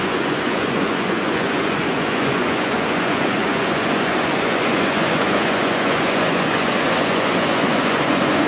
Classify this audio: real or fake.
fake